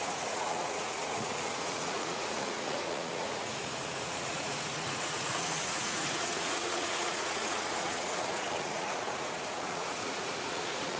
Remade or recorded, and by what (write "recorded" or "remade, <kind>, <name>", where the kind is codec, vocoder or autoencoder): remade, vocoder, Vocos